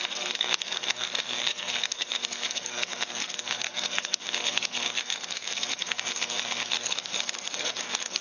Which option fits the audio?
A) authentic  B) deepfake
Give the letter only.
B